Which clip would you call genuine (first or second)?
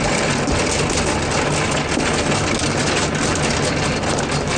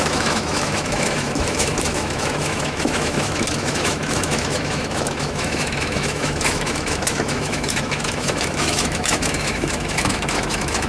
first